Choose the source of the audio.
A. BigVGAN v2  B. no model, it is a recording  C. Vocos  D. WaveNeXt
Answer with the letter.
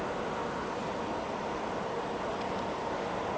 B